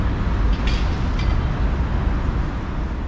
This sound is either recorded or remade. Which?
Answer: recorded